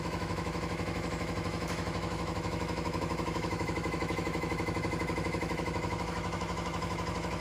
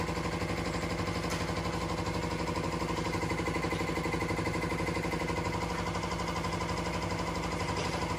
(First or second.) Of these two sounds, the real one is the second